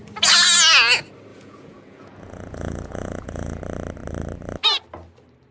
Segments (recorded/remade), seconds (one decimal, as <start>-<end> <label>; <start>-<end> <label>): 0.0-1.3 recorded; 1.3-3.6 remade; 3.6-5.5 recorded